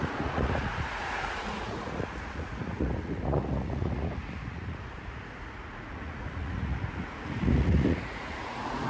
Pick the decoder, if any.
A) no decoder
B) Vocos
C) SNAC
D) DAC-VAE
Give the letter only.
B